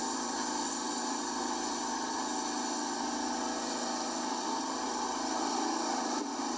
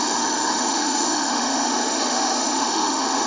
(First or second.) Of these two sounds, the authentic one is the first